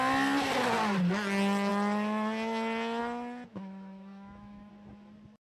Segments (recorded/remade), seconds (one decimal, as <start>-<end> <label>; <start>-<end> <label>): 0.0-3.5 recorded; 3.5-4.7 remade; 4.7-5.6 recorded

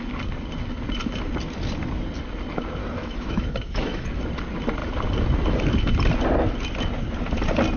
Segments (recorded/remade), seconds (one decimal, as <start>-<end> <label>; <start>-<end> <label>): 0.0-2.8 recorded; 2.8-4.1 remade; 4.1-7.8 recorded